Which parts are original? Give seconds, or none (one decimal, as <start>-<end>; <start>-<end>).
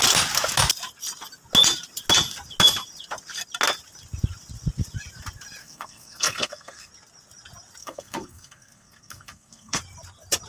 0.0-5.6; 6.9-7.8; 9.8-10.5